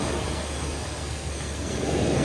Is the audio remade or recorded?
remade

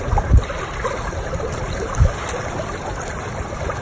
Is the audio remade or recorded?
recorded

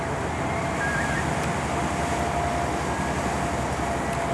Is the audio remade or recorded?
recorded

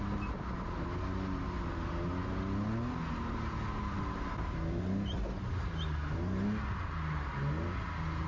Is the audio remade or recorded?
recorded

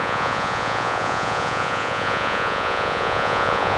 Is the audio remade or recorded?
remade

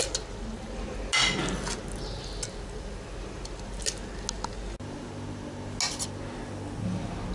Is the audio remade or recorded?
recorded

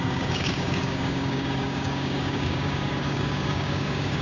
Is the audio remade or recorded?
remade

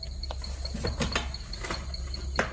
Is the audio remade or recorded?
recorded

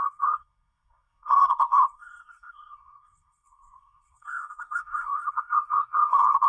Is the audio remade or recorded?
remade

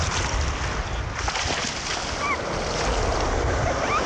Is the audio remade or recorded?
recorded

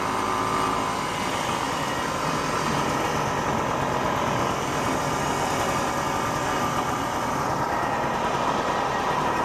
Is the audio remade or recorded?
recorded